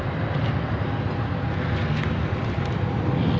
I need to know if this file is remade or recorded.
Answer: recorded